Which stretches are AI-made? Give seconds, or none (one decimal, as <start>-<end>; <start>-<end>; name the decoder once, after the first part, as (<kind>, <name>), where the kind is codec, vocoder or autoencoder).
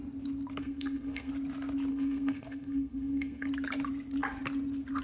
0.6-1.3 (codec, SNAC); 1.9-3.5